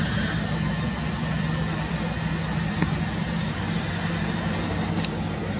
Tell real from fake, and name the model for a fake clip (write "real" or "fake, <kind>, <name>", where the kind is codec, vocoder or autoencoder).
real